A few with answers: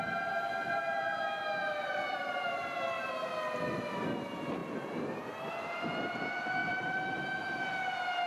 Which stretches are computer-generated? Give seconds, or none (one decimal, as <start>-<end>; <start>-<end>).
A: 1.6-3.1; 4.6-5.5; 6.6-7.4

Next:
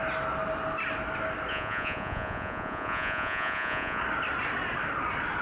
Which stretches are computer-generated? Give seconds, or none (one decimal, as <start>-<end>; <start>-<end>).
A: 1.5-4.0

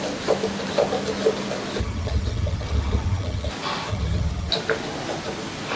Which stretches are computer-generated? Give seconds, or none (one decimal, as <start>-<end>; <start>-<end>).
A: 1.8-3.5; 3.9-4.5

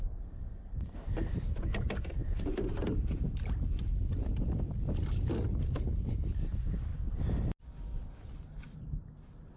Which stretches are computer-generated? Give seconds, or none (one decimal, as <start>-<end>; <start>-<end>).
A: 2.2-6.3

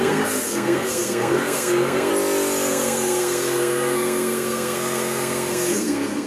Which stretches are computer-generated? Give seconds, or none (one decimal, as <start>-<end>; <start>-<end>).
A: 0.0-2.1; 2.7-6.3

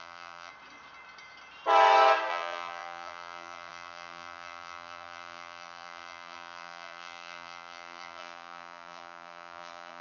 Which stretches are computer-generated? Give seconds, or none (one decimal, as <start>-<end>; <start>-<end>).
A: 0.0-0.5; 2.3-10.0

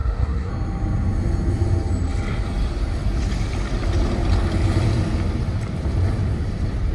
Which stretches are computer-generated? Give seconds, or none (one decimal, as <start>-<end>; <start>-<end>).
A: 0.0-0.5